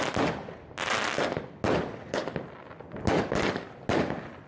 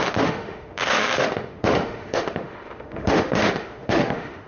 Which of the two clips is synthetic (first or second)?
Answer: second